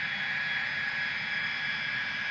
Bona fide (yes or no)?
yes